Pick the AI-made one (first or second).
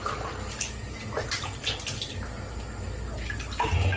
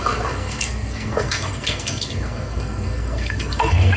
second